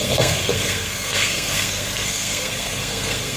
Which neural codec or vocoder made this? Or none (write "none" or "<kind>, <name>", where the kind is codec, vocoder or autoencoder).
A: codec, SNAC